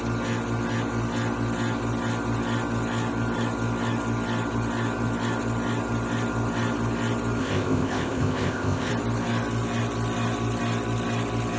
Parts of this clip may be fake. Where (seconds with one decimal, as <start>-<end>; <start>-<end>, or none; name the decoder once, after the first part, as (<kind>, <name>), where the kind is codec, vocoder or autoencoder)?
7.4-8.9 (codec, ZipCodec)